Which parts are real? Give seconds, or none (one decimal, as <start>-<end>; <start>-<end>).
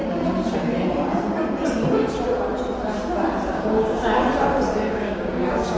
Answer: 0.0-3.5; 4.2-4.9